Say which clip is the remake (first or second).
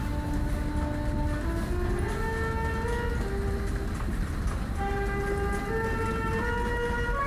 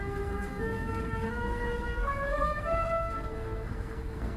second